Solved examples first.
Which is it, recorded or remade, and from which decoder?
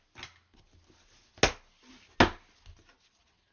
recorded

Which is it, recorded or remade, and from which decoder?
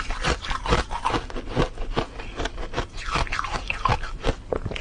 recorded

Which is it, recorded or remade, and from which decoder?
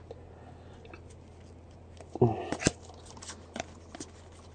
recorded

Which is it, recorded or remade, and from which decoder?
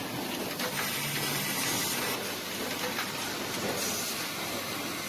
recorded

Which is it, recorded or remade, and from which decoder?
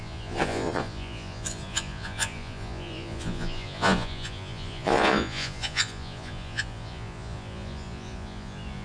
remade, vocoder, Vocos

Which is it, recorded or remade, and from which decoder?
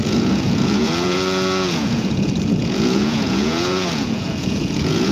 remade, vocoder, Vocos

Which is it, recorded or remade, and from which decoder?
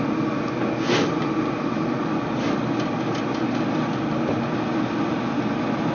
recorded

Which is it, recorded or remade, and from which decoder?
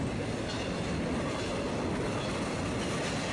recorded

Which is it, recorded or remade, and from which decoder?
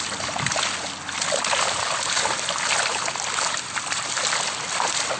recorded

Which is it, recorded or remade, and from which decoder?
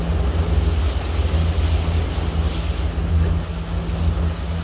recorded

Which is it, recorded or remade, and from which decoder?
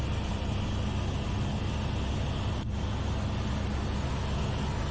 recorded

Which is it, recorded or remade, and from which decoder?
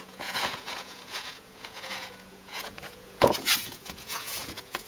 remade, vocoder, Vocos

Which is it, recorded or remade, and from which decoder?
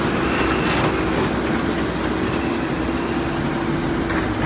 recorded